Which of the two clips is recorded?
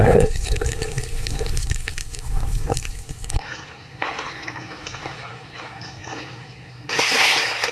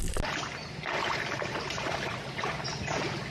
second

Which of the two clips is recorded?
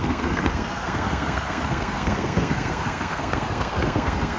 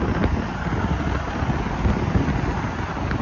second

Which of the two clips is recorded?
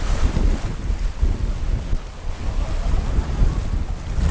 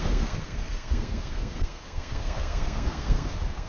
first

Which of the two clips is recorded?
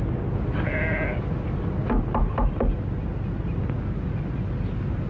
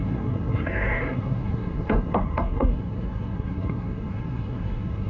first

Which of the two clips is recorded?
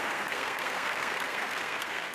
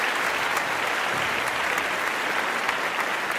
second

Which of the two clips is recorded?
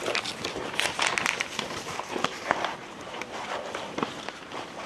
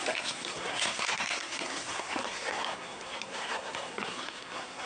first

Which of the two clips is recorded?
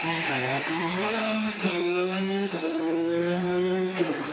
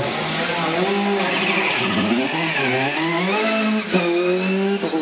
second